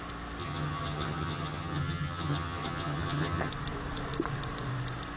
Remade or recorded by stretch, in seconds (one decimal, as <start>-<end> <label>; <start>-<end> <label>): 0.0-0.4 recorded; 0.4-3.5 remade; 3.5-5.2 recorded